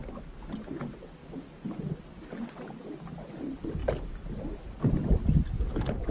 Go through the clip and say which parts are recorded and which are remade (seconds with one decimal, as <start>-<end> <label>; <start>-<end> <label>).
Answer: 0.0-6.1 recorded